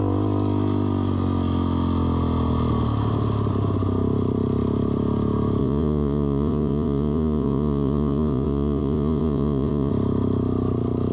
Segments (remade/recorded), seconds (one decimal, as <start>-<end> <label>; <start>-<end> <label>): 0.0-5.6 recorded; 5.6-9.9 remade; 9.9-11.1 recorded